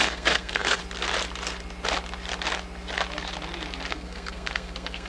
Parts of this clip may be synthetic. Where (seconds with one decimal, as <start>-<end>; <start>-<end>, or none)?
0.0-0.8; 3.9-5.1